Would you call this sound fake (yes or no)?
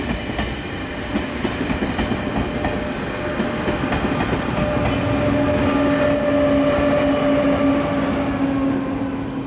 no